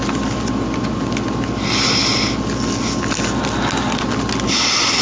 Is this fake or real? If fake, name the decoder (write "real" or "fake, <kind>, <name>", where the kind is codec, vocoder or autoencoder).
real